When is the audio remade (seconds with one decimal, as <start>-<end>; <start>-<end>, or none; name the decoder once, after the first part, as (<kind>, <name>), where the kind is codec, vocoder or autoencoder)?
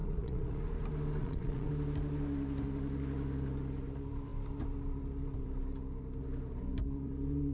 0.0-0.6 (vocoder, Vocos); 1.2-1.7